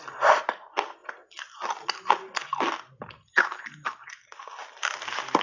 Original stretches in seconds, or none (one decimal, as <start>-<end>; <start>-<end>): 0.0-5.4